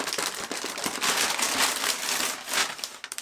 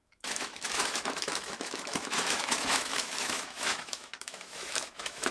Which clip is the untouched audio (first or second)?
first